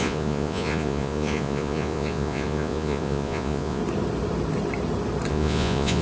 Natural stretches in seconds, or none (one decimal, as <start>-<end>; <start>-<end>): 3.8-5.3